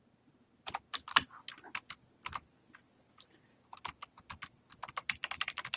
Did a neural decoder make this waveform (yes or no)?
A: no